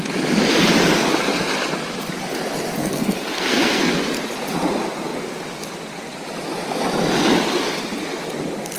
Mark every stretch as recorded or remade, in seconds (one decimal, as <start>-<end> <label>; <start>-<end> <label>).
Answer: 0.0-2.8 recorded; 2.8-4.0 remade; 4.0-8.8 recorded